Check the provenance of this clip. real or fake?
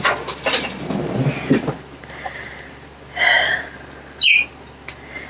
real